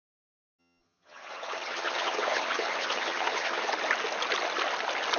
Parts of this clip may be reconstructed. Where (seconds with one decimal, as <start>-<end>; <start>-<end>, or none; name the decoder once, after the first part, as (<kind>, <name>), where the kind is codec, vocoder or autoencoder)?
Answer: 0.6-3.7 (vocoder, HiFi-GAN)

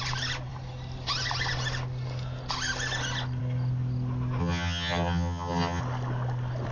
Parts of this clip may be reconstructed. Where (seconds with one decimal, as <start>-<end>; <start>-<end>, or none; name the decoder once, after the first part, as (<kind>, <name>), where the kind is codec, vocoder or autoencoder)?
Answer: 4.4-5.8 (vocoder, HiFi-GAN)

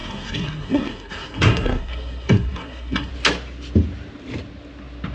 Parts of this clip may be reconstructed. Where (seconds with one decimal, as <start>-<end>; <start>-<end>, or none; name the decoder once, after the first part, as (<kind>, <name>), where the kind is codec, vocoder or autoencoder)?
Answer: 0.0-3.1 (codec, SNAC)

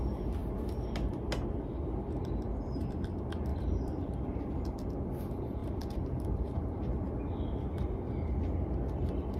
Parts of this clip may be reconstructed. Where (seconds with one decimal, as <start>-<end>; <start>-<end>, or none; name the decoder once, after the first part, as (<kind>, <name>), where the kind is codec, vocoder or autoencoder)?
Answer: 3.5-4.9 (vocoder, BigVGAN v2); 5.6-7.1

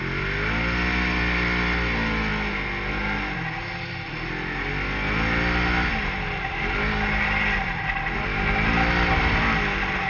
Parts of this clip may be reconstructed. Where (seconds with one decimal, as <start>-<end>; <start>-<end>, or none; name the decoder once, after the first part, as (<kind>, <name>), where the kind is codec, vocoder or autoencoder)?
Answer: none

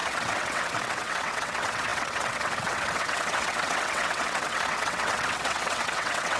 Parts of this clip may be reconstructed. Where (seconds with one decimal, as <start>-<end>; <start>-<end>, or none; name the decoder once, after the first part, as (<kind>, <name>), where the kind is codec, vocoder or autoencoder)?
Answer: 0.0-6.4 (vocoder, WaveNeXt)

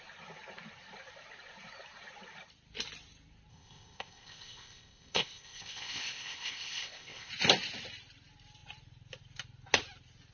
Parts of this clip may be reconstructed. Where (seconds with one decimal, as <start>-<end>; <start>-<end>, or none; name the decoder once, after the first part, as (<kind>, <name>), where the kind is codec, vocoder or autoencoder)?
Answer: 3.5-7.3 (codec, ZipCodec)